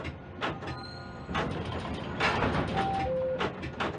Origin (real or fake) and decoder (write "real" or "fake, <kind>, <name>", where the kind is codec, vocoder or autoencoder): real